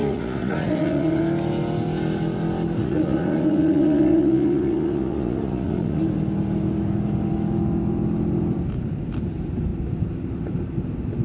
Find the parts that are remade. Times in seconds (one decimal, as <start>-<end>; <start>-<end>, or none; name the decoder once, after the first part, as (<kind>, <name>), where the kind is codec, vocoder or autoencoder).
0.0-1.2 (vocoder, Vocos); 2.8-6.0